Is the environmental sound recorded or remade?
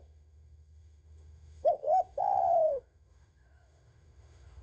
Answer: remade